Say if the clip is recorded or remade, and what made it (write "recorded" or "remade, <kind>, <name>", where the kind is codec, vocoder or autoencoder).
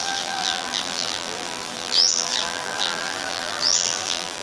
remade, vocoder, BigVGAN v2